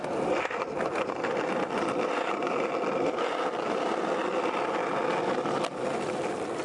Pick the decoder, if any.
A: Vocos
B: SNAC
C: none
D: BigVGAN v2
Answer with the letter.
C